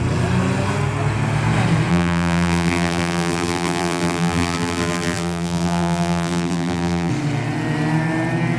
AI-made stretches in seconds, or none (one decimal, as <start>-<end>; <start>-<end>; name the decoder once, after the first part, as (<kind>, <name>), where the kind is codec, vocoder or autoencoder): 1.9-7.1 (vocoder, BigVGAN v2)